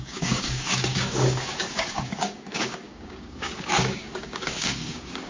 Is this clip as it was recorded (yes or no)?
no